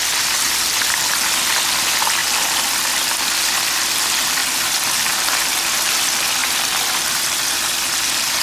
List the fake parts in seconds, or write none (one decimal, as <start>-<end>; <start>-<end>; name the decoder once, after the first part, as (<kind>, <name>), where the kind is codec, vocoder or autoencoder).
6.4-7.2 (vocoder, BigVGAN v2)